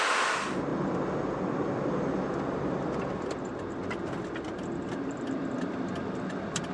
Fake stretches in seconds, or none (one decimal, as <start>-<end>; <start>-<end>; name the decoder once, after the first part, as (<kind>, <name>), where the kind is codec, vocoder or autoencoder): none